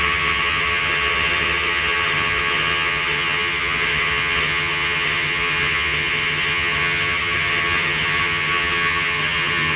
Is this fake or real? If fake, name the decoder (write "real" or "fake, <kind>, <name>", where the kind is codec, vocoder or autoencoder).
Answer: fake, vocoder, HiFi-GAN